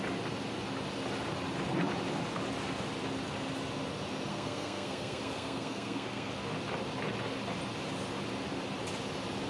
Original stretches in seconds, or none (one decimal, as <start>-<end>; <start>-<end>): 0.0-4.3; 6.3-9.5